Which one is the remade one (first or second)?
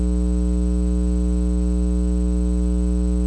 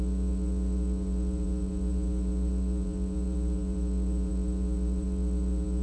second